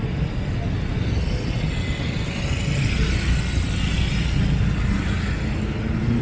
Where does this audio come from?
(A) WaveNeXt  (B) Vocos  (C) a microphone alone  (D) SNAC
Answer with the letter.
C